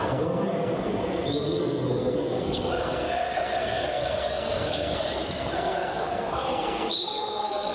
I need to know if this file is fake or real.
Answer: fake